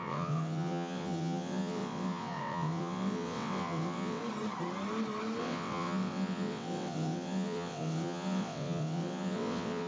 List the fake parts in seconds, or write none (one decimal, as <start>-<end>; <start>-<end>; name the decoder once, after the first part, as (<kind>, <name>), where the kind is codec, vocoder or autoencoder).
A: 0.0-4.2 (vocoder, WaveNeXt); 5.4-9.9